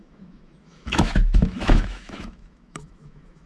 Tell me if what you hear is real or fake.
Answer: fake